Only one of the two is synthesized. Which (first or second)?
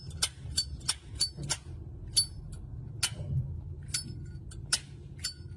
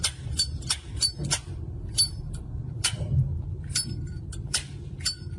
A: second